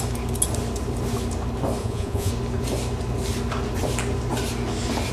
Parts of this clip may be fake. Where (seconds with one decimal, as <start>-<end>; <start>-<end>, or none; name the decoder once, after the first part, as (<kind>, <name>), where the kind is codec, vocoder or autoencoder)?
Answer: 1.8-2.3 (vocoder, Vocos)